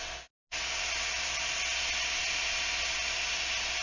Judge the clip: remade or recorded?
recorded